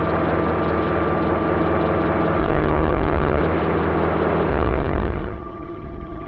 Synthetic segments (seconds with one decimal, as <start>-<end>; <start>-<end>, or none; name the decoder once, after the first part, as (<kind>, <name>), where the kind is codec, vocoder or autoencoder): 2.4-3.4 (vocoder, HiFi-GAN); 4.5-6.3